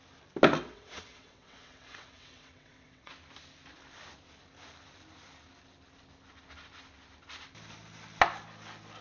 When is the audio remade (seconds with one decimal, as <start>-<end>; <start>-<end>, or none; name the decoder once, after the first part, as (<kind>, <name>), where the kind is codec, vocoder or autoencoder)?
0.6-3.1 (vocoder, WaveNeXt)